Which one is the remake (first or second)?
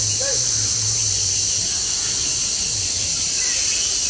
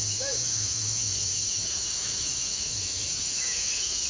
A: second